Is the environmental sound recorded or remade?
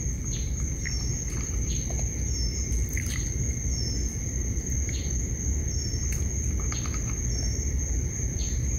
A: recorded